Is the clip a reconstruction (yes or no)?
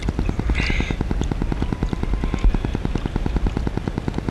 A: no